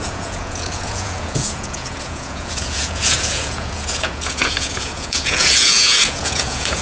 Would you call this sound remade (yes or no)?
yes